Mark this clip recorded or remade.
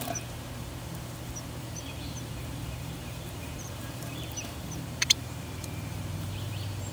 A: remade